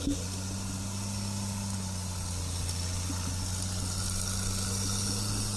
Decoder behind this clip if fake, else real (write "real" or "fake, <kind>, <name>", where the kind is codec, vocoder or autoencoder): real